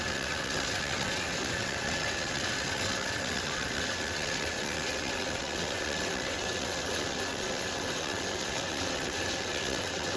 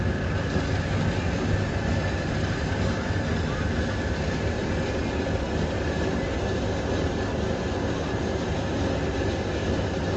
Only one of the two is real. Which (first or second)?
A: second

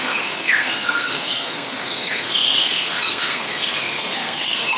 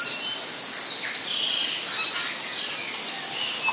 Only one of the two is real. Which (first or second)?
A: second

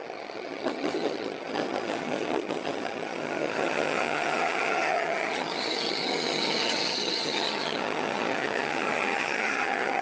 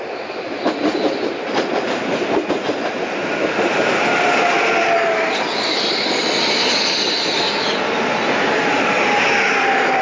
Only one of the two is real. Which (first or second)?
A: second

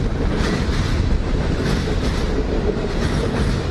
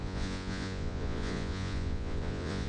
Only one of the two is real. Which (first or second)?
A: first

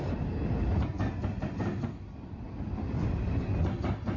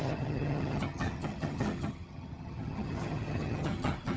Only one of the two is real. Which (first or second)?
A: first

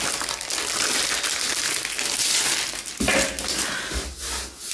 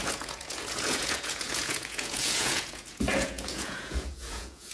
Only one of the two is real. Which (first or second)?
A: first